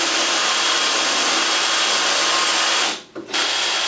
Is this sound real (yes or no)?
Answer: no